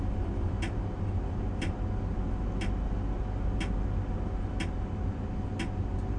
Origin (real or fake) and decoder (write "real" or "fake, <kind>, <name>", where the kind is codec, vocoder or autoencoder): real